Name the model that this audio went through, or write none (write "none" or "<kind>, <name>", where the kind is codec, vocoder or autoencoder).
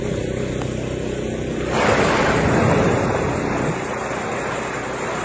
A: none